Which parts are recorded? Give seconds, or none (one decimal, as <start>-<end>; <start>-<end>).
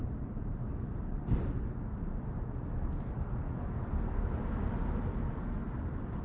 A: 0.0-6.2